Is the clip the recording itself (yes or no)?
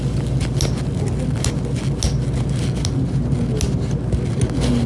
yes